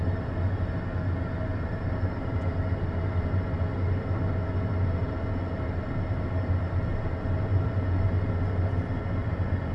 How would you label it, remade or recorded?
recorded